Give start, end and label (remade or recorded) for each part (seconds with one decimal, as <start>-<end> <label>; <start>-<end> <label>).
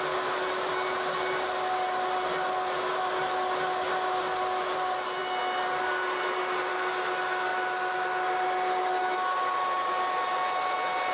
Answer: 0.0-11.1 recorded